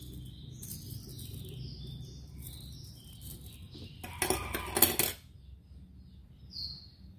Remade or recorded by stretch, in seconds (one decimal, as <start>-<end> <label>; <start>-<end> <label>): 0.0-7.2 recorded